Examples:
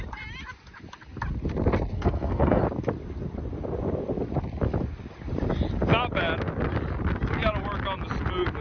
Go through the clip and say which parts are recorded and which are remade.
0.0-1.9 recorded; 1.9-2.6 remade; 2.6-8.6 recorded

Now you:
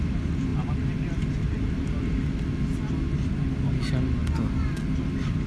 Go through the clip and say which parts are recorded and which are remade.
0.0-5.5 recorded

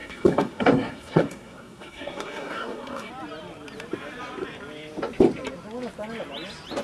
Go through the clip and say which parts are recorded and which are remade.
0.0-3.1 remade; 3.1-6.8 recorded

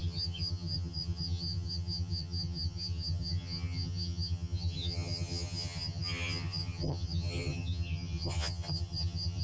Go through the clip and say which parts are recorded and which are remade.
0.0-9.4 remade

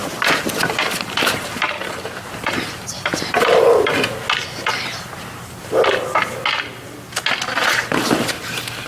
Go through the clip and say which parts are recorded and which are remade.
0.0-0.6 recorded; 0.6-1.8 remade; 1.8-2.4 recorded; 2.4-3.5 remade; 3.5-8.4 recorded; 8.4-8.9 remade

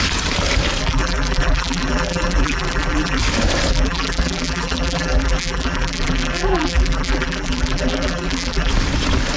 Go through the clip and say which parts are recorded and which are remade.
0.0-0.8 recorded; 0.8-3.2 remade; 3.2-3.7 recorded; 3.7-8.7 remade; 8.7-9.4 recorded

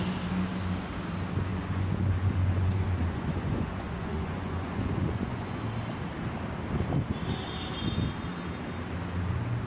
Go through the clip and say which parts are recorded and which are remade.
0.0-1.5 recorded; 1.5-5.6 remade; 5.6-9.7 recorded